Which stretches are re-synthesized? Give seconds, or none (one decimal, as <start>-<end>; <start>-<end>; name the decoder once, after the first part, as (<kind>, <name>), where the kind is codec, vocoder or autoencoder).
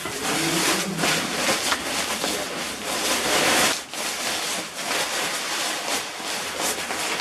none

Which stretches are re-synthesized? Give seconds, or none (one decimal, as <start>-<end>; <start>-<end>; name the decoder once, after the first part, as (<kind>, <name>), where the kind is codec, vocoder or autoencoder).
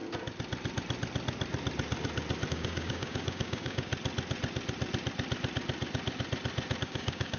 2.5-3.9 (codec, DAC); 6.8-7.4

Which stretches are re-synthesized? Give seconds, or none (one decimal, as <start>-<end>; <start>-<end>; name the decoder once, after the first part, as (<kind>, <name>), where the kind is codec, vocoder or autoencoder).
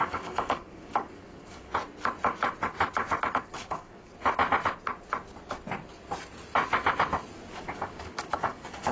0.0-1.7 (codec, DAC); 3.4-4.1; 7.5-8.9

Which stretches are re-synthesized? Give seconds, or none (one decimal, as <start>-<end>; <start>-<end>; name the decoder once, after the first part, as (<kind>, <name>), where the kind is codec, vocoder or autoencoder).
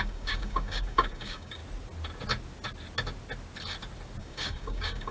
0.0-1.6 (codec, DAC); 4.2-5.1